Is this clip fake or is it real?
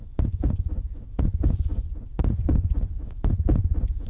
fake